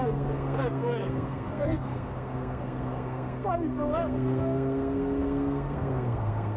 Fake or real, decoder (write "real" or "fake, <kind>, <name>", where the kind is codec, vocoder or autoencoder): fake, codec, SNAC